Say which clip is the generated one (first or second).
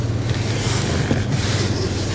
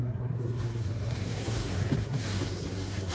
second